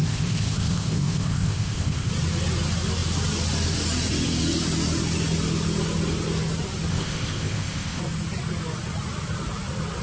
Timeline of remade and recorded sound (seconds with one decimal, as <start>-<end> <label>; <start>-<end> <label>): 0.0-2.1 remade; 2.1-6.9 recorded; 6.9-8.0 remade; 8.0-10.0 recorded